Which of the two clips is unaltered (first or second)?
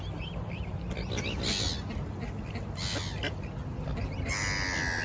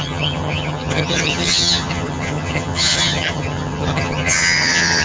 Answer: first